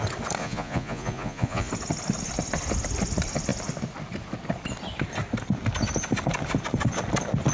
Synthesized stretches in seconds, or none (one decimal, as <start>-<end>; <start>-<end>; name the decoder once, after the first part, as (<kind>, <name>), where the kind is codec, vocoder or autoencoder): 0.4-1.7 (vocoder, Vocos)